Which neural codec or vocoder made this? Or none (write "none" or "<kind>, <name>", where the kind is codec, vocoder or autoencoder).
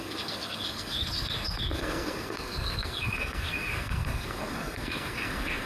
codec, SNAC